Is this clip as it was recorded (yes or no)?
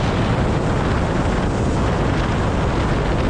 yes